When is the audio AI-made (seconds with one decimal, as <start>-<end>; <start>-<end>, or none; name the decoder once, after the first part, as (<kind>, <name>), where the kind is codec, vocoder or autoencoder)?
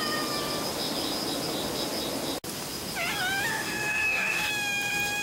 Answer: 3.5-4.5 (codec, DAC)